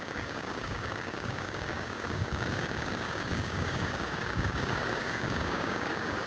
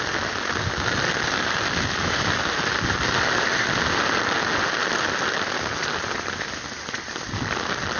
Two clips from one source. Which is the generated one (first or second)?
first